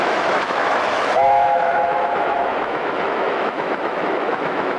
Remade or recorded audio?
remade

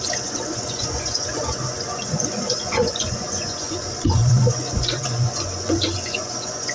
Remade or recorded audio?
remade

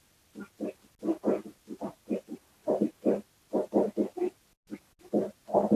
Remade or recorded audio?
recorded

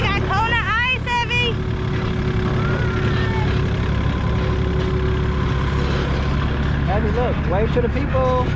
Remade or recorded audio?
recorded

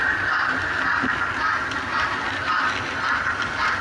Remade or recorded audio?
remade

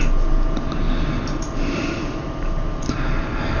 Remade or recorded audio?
recorded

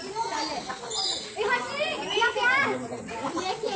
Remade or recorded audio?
recorded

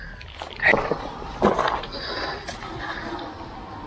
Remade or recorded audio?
recorded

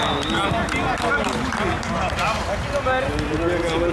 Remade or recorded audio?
recorded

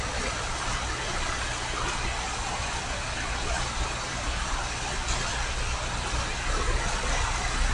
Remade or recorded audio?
recorded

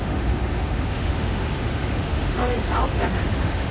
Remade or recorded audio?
remade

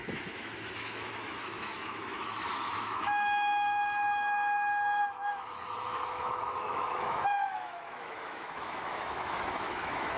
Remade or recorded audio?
remade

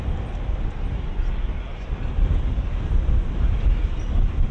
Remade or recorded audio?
recorded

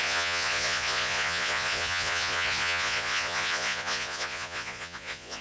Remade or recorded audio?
remade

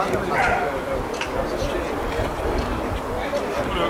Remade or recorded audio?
recorded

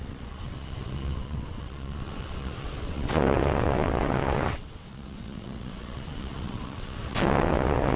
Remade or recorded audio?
remade